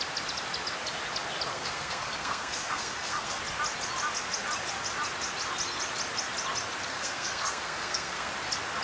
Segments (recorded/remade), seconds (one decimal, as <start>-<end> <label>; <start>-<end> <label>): 0.0-1.5 recorded; 1.5-3.4 remade; 3.4-6.9 recorded; 6.9-8.3 remade; 8.3-8.8 recorded